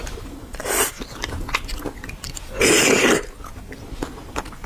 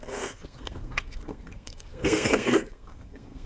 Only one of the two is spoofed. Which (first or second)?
second